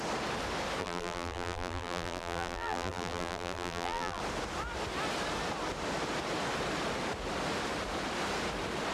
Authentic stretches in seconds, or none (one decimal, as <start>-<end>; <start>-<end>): 0.0-0.8; 4.2-8.9